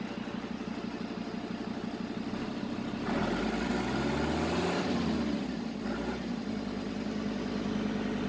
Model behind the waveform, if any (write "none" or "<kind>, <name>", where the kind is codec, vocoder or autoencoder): none